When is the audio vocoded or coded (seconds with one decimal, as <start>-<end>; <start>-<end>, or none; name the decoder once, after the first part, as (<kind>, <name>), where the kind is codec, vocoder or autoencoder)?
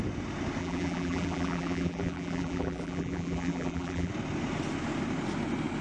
0.6-4.1 (vocoder, BigVGAN v2)